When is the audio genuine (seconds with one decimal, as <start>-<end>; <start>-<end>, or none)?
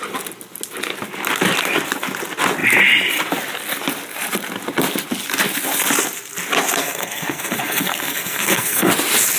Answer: 0.0-6.8; 8.9-9.4